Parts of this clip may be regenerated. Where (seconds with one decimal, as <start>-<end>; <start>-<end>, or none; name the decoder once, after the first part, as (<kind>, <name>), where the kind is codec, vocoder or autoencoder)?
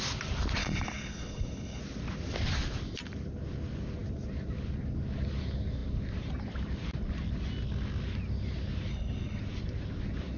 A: 0.6-1.8 (codec, HILCodec); 8.9-9.4